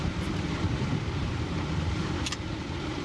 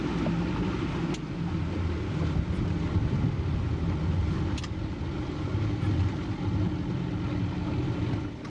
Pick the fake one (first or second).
first